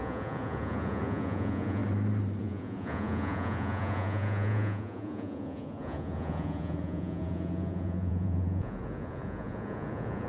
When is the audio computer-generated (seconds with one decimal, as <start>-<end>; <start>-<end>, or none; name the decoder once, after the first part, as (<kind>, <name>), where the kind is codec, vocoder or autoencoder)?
0.0-1.8 (vocoder, Vocos); 2.4-10.3